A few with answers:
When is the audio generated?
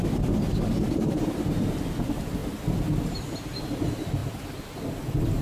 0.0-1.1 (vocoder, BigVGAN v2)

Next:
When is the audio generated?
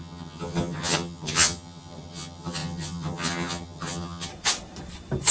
0.0-4.3 (vocoder, HiFi-GAN)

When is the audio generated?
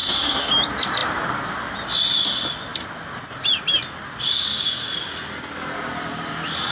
0.0-0.5 (codec, SNAC)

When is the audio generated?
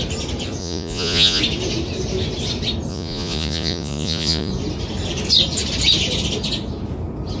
0.6-1.4 (vocoder, Vocos); 2.9-4.5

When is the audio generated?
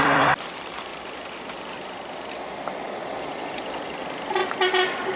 0.0-0.9 (vocoder, BigVGAN v2); 3.2-4.4